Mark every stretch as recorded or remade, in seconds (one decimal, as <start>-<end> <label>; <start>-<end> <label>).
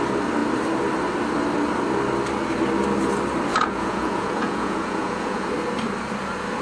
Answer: 0.0-3.5 recorded; 3.5-5.5 remade; 5.5-6.6 recorded